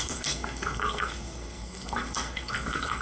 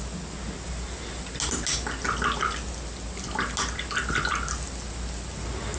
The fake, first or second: first